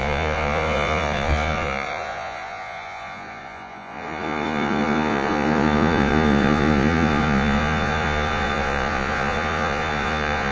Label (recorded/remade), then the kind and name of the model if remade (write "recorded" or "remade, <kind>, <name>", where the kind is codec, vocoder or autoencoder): remade, vocoder, Vocos